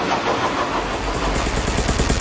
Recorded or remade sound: recorded